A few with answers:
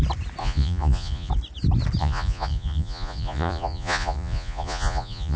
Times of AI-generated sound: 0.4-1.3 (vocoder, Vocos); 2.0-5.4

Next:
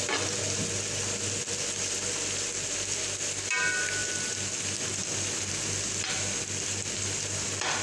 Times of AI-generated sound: none